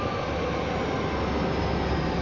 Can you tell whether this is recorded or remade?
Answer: recorded